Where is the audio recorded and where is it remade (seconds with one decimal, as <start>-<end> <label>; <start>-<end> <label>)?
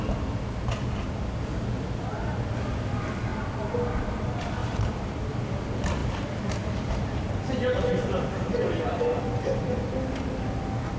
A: 0.0-4.6 recorded; 4.6-5.2 remade; 5.2-6.0 recorded; 6.0-9.2 remade; 9.2-11.0 recorded